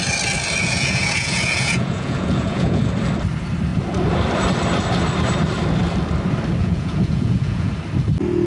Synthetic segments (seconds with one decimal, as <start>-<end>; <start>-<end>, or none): 0.6-2.8; 6.6-7.7